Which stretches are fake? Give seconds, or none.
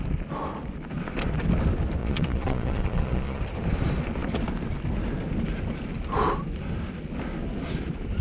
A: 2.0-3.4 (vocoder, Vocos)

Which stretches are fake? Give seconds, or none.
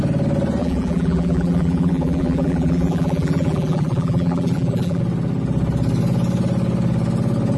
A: 0.6-5.0 (vocoder, BigVGAN v2)